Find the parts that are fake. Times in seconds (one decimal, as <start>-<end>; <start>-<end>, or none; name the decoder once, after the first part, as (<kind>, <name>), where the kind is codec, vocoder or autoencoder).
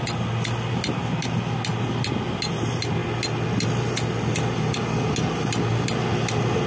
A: none